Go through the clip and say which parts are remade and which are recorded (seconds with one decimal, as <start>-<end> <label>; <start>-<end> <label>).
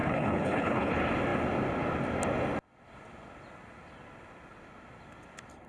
0.0-0.9 remade; 0.9-5.7 recorded